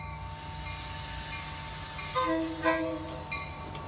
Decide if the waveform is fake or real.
real